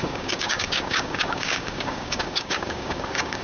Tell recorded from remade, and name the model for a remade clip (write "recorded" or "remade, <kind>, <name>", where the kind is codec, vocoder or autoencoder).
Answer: remade, codec, DAC